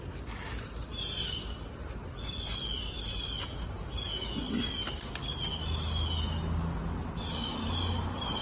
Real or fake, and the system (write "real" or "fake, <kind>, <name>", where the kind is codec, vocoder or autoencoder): real